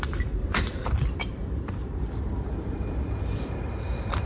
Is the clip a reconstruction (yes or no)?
yes